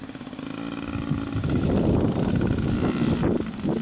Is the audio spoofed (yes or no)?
yes